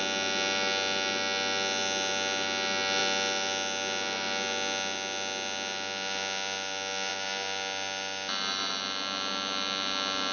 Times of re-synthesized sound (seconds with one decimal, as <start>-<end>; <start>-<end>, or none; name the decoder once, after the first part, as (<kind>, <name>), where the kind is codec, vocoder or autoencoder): none